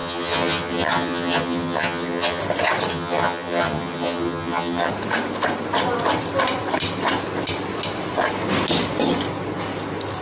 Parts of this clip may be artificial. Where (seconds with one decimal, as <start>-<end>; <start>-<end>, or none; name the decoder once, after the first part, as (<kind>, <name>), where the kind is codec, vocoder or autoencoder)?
0.0-2.4 (vocoder, HiFi-GAN); 2.9-4.9